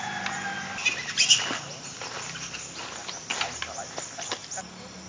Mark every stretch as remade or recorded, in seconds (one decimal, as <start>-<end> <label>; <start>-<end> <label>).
0.0-5.1 recorded